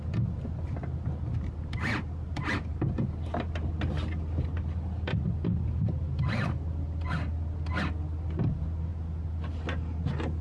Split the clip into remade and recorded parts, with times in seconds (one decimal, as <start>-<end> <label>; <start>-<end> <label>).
0.0-2.7 remade; 2.7-3.5 recorded; 3.5-7.3 remade; 7.3-8.5 recorded; 8.5-8.9 remade; 8.9-10.4 recorded

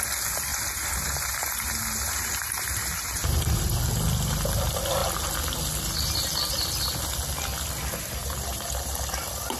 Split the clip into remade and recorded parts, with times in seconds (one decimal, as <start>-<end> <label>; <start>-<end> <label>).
0.0-0.5 recorded; 0.5-3.8 remade; 3.8-8.2 recorded; 8.2-9.0 remade; 9.0-9.6 recorded